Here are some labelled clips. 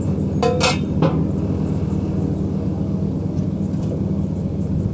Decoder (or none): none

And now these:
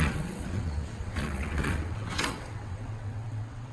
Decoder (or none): vocoder, WaveNeXt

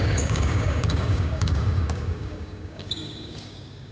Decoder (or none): codec, DAC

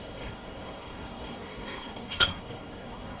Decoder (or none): codec, SNAC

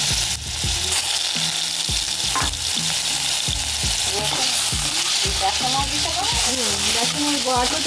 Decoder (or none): none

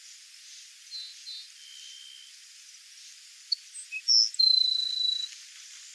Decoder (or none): none